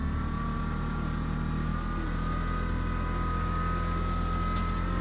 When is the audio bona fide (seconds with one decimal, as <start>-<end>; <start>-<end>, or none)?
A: 0.0-5.0